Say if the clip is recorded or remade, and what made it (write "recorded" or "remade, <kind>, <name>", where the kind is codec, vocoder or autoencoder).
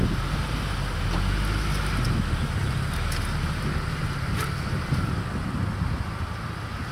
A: recorded